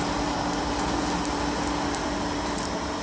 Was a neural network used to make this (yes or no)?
no